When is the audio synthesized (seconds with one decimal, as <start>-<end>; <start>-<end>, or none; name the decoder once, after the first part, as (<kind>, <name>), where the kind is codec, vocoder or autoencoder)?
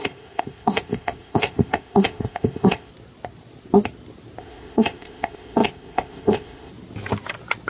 0.0-2.9 (codec, ZipCodec); 4.4-6.7